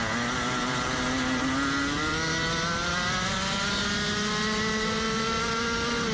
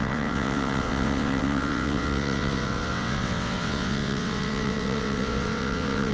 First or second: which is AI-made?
second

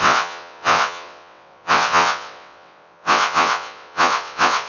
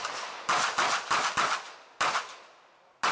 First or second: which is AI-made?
first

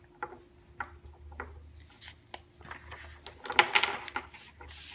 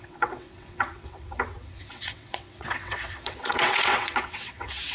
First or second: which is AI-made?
second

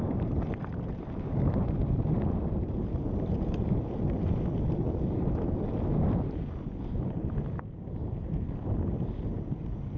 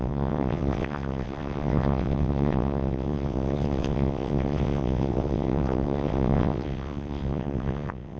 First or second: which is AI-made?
second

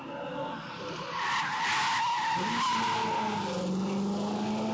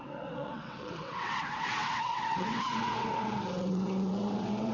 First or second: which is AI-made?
second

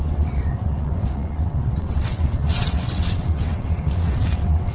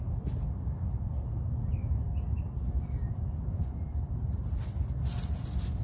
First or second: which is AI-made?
first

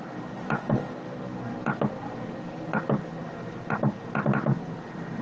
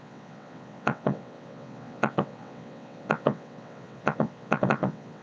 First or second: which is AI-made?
second